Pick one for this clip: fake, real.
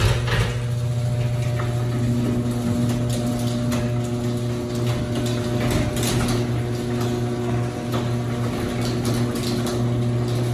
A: real